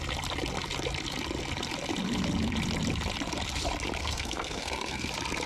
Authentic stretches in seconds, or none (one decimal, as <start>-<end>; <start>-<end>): 0.0-4.0; 5.1-5.5